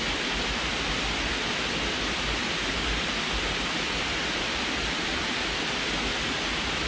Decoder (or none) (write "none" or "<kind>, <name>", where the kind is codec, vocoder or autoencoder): none